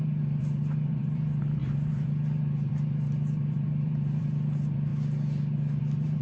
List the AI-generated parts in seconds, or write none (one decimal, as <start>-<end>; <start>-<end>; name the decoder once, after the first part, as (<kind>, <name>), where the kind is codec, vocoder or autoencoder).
0.0-4.9 (vocoder, BigVGAN v2); 5.8-6.2